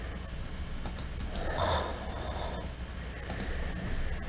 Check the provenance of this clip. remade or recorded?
recorded